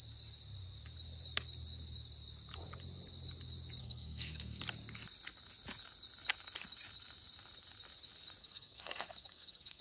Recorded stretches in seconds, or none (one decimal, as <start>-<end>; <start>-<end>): 0.0-3.8; 4.6-8.4